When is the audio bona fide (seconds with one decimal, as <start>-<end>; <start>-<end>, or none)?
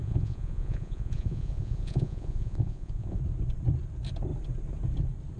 3.2-5.4